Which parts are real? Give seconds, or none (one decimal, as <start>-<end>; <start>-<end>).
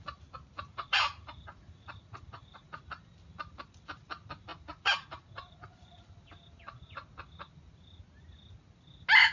0.0-0.7; 2.8-4.5; 6.0-9.3